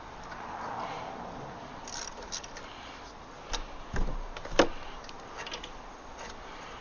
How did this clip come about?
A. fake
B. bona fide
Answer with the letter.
B